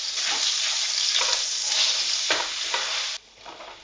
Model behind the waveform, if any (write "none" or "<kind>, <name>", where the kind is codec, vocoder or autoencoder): none